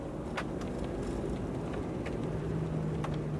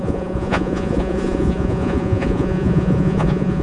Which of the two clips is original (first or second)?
first